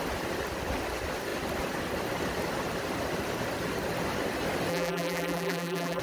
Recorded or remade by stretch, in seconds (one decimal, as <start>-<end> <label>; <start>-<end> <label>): 0.0-4.7 recorded; 4.7-6.0 remade